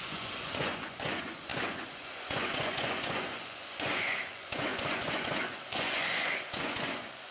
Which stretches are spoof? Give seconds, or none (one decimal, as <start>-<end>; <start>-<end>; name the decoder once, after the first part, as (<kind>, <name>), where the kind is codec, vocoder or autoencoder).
0.0-7.3 (vocoder, Vocos)